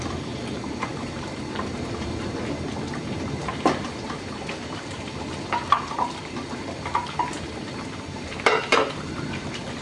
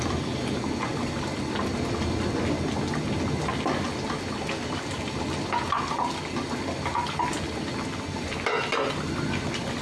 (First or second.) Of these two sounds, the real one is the second